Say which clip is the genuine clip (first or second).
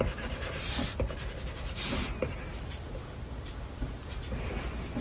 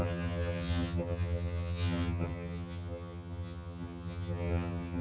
first